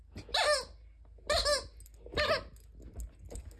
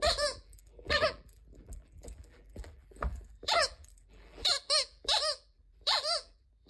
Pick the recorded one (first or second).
first